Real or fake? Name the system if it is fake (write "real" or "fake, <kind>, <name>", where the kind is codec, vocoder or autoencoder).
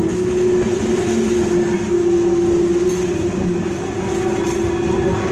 real